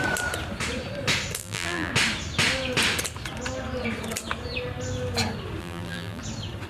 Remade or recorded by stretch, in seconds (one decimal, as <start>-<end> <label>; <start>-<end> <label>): 0.0-1.4 recorded; 1.4-1.9 remade; 1.9-5.6 recorded; 5.6-6.2 remade; 6.2-6.7 recorded